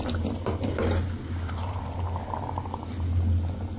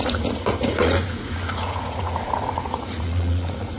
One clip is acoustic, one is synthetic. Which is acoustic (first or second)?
first